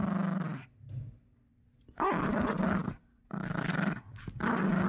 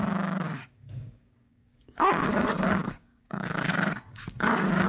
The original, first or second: first